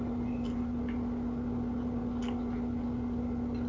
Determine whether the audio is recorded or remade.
recorded